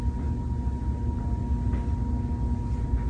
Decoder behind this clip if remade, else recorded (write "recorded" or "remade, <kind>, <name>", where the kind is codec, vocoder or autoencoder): recorded